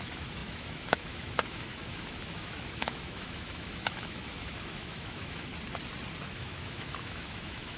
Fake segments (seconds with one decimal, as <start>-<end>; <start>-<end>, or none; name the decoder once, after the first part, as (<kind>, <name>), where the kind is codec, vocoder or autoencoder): 0.0-5.5 (autoencoder, DAC-VAE); 6.3-7.8